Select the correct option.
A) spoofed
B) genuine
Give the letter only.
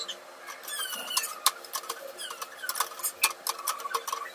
B